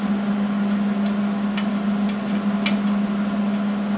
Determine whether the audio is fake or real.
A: real